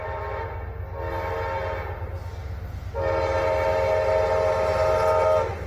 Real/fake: real